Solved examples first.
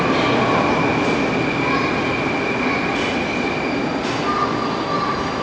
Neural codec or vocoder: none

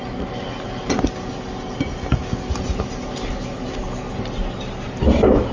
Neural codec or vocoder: none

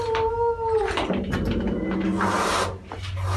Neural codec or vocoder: none